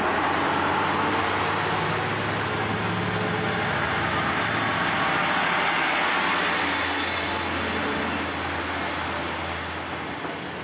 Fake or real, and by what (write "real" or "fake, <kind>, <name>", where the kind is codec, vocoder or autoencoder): real